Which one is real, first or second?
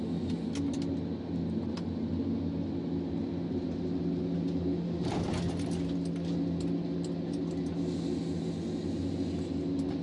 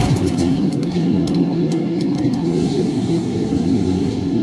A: first